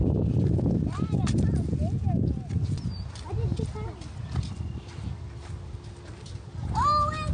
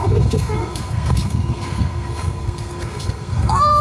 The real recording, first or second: first